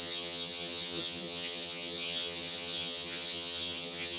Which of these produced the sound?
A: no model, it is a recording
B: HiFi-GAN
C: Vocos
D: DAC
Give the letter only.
B